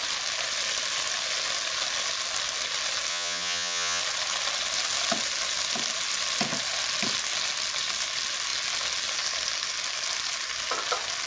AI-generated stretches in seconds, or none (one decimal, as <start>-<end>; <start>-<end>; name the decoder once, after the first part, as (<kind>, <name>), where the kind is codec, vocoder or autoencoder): 3.1-4.0 (vocoder, HiFi-GAN)